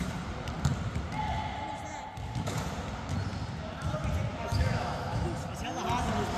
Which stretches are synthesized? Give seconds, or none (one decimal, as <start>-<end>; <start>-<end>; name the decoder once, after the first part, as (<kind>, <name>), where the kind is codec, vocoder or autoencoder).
4.3-5.2 (autoencoder, DAC-VAE)